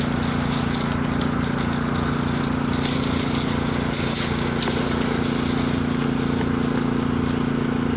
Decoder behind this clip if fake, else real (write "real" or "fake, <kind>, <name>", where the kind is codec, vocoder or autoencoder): real